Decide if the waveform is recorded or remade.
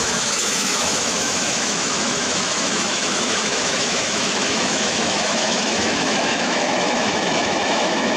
remade